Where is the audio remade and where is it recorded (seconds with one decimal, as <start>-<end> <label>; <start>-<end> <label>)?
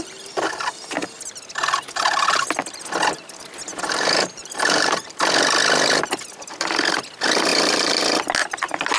0.0-3.7 recorded; 3.7-5.2 remade; 5.2-7.5 recorded; 7.5-8.0 remade; 8.0-9.0 recorded